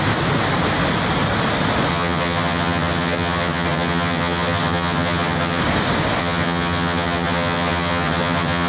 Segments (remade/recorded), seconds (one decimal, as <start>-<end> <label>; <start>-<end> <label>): 0.0-1.9 recorded; 1.9-5.6 remade; 5.6-6.2 recorded; 6.2-8.7 remade